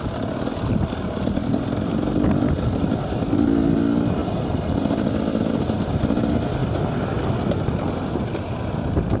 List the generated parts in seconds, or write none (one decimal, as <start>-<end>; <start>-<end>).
none